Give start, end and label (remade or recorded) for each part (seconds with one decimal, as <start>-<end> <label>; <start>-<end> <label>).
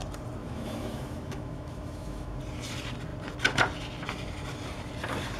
0.0-0.4 recorded; 0.4-2.4 remade; 2.4-5.4 recorded